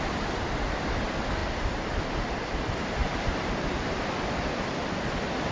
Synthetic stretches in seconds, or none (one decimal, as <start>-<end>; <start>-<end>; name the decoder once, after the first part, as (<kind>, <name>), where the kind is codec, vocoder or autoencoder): 0.0-1.4 (vocoder, BigVGAN v2); 2.3-3.0; 3.8-5.5